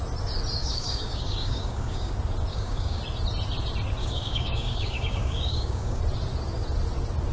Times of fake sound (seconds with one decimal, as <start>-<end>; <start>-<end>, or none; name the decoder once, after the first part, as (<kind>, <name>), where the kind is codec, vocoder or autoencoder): 0.6-2.1 (codec, DAC); 2.5-3.0; 4.0-6.0